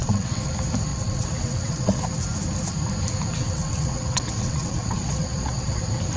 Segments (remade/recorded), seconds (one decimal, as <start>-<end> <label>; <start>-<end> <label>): 0.0-0.5 remade; 0.5-0.9 recorded; 0.9-2.0 remade; 2.0-3.4 recorded; 3.4-5.8 remade; 5.8-6.2 recorded